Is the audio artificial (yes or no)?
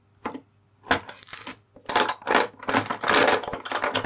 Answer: no